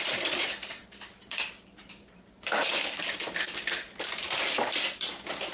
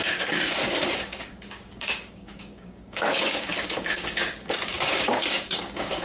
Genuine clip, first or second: first